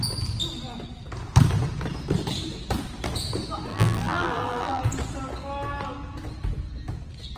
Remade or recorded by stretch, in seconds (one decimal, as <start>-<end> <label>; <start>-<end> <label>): 0.0-3.7 recorded; 3.7-4.8 remade; 4.8-7.4 recorded